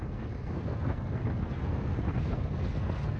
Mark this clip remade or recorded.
remade